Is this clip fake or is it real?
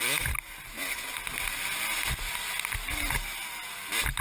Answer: real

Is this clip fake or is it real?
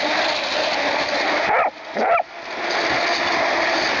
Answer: real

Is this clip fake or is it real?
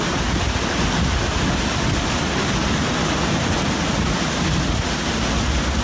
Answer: real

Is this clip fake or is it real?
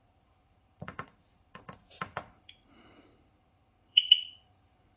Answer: fake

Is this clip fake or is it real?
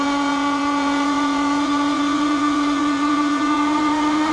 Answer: fake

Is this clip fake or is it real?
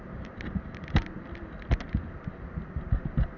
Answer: real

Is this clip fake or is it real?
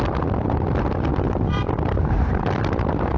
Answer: fake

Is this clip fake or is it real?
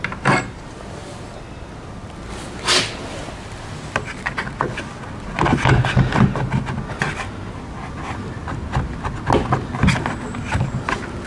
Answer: real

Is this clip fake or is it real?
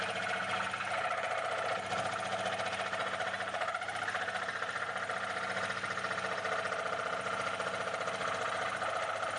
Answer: real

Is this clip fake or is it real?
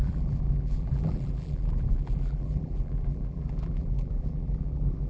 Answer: fake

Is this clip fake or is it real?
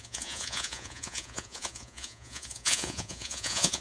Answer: fake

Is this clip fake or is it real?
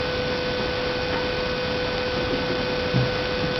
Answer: real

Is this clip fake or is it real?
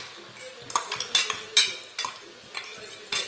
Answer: real